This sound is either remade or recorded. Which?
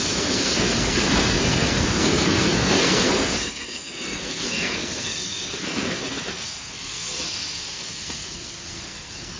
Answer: remade